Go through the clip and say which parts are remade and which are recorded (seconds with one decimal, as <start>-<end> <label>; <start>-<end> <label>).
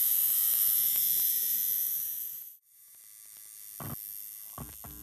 0.0-3.0 remade; 3.0-5.0 recorded